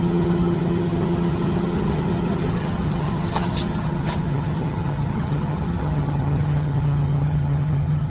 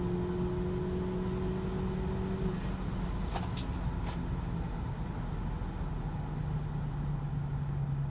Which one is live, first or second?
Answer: second